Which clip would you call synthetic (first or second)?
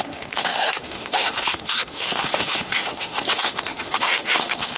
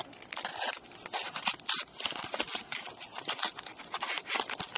first